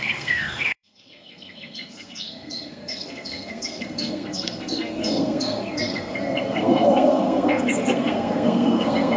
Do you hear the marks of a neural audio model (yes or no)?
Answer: yes